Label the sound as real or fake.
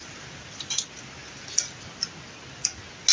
real